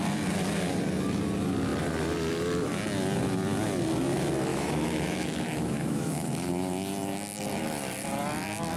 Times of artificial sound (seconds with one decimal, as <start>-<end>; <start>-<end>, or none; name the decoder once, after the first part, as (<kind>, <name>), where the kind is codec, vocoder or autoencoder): 4.5-6.5 (autoencoder, DAC-VAE)